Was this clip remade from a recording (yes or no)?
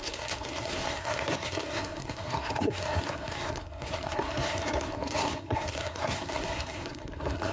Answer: yes